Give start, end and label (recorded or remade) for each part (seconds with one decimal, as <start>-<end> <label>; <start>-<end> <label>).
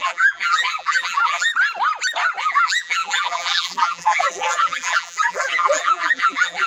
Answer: 0.0-1.5 remade; 1.5-2.4 recorded; 2.4-6.7 remade